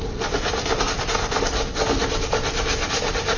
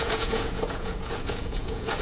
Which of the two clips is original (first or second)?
first